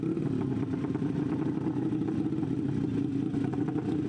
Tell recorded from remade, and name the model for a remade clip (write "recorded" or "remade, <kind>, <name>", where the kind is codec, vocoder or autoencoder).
recorded